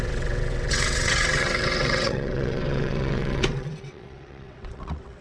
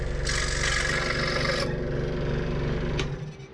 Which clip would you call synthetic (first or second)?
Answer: first